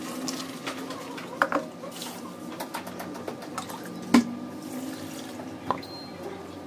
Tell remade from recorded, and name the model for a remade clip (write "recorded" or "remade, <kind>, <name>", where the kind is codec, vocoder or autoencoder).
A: recorded